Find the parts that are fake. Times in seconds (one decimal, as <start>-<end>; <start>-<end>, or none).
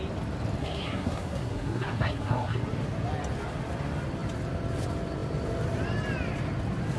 0.6-2.6